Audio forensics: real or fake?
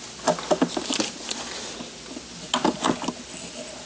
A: real